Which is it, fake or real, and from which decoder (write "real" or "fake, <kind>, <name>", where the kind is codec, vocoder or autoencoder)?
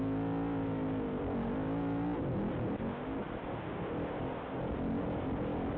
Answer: real